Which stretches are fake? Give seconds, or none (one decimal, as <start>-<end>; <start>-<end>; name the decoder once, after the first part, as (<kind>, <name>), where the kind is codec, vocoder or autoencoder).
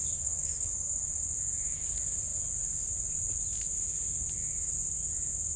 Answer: 0.0-1.2 (codec, DAC)